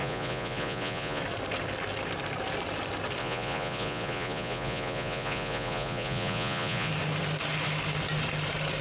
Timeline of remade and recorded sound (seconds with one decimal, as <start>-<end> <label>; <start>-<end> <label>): 0.0-1.2 remade; 1.2-3.2 recorded; 3.2-6.9 remade; 6.9-8.8 recorded